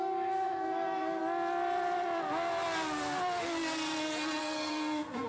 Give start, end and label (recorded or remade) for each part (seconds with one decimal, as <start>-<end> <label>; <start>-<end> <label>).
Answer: 0.0-1.2 remade; 1.2-4.4 recorded; 4.4-5.3 remade